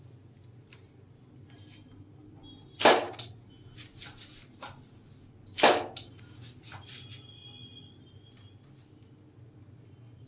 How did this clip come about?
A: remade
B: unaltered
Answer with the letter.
B